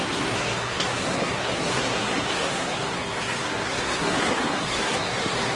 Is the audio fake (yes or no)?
yes